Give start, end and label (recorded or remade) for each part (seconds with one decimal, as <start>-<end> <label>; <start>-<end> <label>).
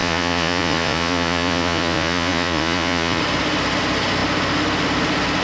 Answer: 0.0-3.2 remade; 3.2-5.4 recorded